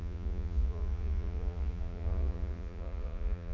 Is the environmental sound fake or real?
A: fake